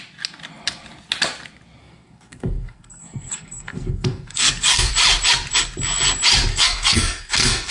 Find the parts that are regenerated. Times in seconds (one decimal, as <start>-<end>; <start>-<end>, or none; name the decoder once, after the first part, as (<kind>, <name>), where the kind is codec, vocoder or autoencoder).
1.8-4.9 (codec, SNAC); 6.5-7.7